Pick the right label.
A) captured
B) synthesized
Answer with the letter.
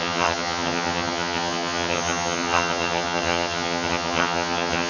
B